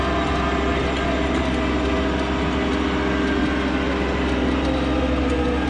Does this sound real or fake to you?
real